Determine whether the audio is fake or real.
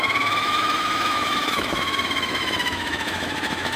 fake